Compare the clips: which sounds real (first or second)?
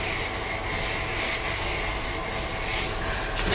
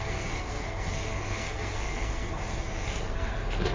first